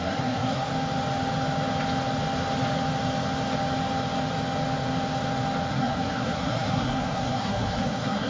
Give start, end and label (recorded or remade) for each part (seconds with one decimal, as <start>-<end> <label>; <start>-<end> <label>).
0.0-0.7 remade; 0.7-5.7 recorded; 5.7-8.3 remade